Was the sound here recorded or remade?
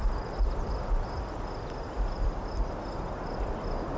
recorded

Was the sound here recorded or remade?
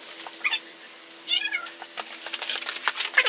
remade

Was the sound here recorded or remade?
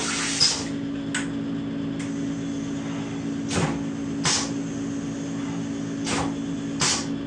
recorded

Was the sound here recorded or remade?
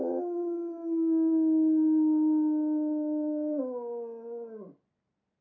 recorded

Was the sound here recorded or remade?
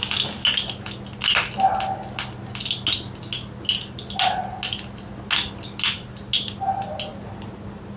recorded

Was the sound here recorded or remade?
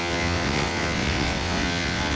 remade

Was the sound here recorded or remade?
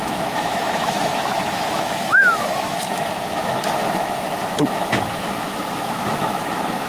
remade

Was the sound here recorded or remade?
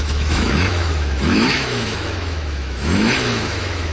remade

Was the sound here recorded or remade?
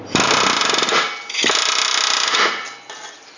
recorded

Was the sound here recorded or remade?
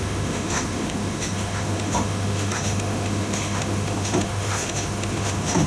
remade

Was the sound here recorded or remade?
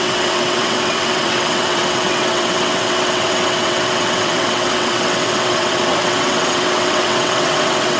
remade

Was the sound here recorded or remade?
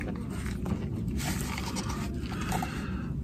recorded